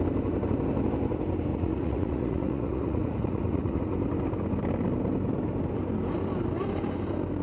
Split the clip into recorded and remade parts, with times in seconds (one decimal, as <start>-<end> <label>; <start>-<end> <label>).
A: 0.0-1.5 recorded; 1.5-3.8 remade; 3.8-7.4 recorded